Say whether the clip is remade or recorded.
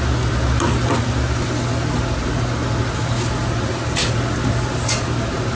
recorded